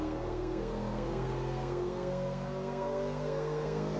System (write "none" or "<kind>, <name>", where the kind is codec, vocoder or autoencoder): codec, SNAC